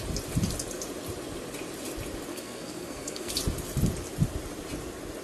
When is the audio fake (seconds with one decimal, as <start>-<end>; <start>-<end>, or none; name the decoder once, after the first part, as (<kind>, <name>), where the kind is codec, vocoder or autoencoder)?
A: 2.3-3.3 (codec, SNAC)